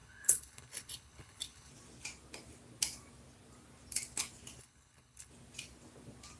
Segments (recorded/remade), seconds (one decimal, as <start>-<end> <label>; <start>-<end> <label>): 0.0-1.7 remade; 1.7-4.6 recorded; 4.6-5.3 remade; 5.3-6.4 recorded